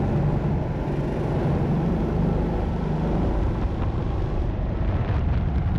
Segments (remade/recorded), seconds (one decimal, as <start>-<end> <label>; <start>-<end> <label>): 0.0-5.8 recorded